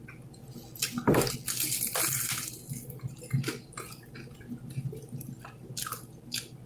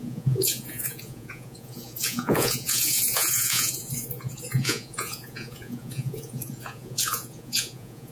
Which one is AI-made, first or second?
second